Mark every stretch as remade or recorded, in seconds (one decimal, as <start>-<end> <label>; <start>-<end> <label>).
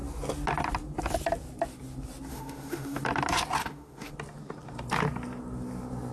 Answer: 0.0-2.3 recorded; 2.3-3.0 remade; 3.0-3.6 recorded; 3.6-4.1 remade; 4.1-6.1 recorded